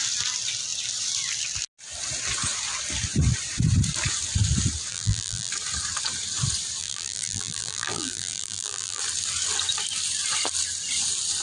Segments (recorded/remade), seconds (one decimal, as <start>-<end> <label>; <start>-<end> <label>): 0.0-4.9 recorded; 4.9-5.5 remade; 5.5-6.8 recorded; 6.8-9.0 remade; 9.0-11.4 recorded